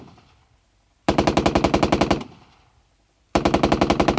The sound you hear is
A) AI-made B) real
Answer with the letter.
B